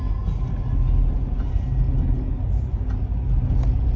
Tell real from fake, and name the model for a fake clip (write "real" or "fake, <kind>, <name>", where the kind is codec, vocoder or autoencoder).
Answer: real